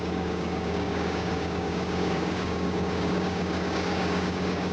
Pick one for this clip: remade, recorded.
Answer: remade